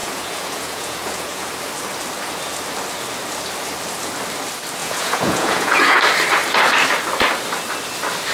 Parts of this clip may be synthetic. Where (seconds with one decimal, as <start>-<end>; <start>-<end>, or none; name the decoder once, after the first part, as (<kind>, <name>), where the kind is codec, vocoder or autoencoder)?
0.0-1.5 (vocoder, Vocos); 4.8-6.0